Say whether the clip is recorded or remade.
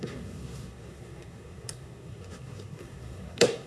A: remade